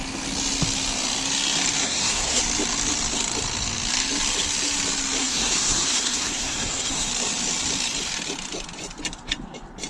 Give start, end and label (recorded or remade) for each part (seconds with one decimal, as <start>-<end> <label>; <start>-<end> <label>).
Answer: 0.0-1.8 recorded; 1.8-2.4 remade; 2.4-5.2 recorded; 5.2-7.1 remade; 7.1-9.9 recorded